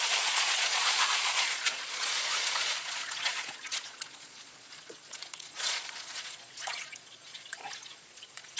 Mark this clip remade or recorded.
remade